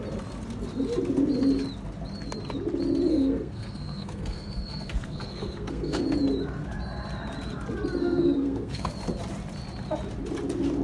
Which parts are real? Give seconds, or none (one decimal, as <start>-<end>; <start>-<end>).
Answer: 0.0-3.1; 6.0-8.0; 8.9-10.8

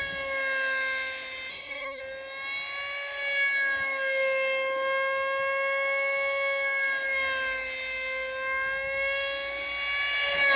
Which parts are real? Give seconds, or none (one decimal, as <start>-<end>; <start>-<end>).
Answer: 0.0-1.5; 2.0-10.6

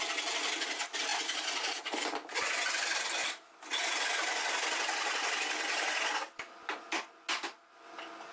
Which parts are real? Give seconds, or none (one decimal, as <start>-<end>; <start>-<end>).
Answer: 0.0-8.3

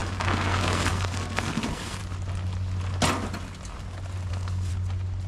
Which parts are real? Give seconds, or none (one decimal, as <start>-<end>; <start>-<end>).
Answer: 2.0-4.3; 4.7-5.3

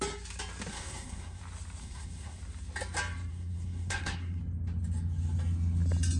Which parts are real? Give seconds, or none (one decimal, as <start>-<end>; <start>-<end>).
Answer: 0.0-0.7; 1.4-1.8; 2.4-3.3; 4.4-6.2